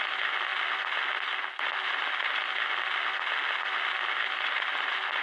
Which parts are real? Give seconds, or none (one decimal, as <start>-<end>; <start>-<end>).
0.0-5.2